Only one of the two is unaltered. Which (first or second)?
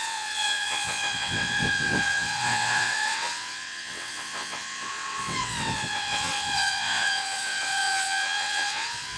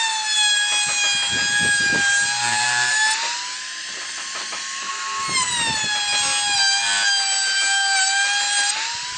second